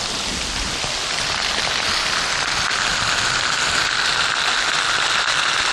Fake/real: real